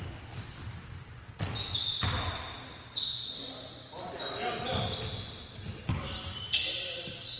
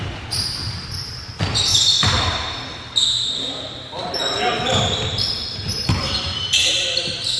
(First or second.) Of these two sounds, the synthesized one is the second